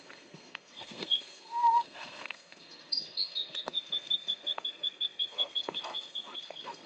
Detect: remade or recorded remade